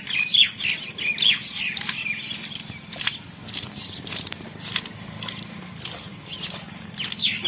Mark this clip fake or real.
real